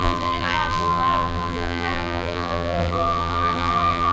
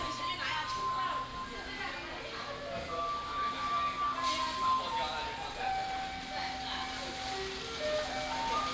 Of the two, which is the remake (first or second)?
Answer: first